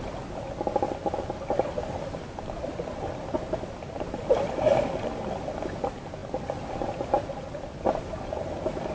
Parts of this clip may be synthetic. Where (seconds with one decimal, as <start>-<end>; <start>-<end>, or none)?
none